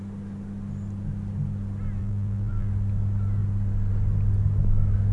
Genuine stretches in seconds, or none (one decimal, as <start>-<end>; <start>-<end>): 0.0-2.0; 2.7-5.1